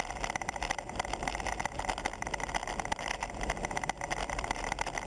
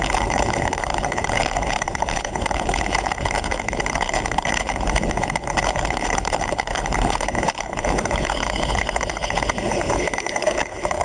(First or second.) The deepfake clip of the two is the second